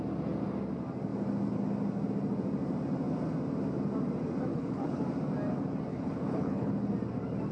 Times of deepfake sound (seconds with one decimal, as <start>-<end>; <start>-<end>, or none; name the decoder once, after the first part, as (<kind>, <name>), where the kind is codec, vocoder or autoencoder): 4.5-5.0 (codec, HILCodec); 5.9-6.9